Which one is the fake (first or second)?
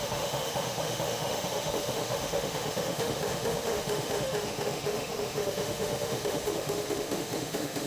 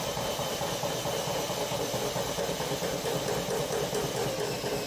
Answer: first